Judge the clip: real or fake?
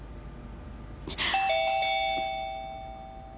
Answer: real